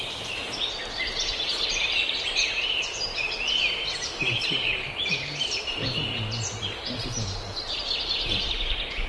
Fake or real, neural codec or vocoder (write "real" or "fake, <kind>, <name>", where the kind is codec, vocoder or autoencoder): fake, vocoder, BigVGAN v2